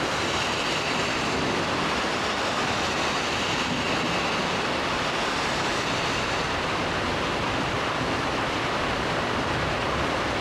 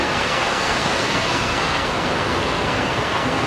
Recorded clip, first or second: first